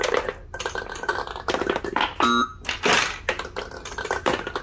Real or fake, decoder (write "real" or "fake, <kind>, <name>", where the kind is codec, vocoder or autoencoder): real